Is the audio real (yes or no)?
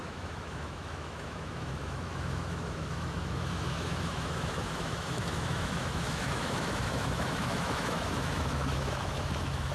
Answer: no